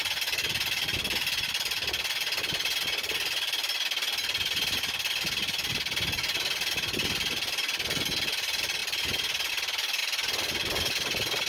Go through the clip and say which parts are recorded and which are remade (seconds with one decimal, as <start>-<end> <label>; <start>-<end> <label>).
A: 0.0-11.5 recorded